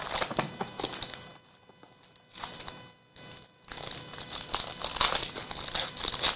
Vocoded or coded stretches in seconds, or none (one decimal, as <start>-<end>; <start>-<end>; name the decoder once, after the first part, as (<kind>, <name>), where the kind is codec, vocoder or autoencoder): none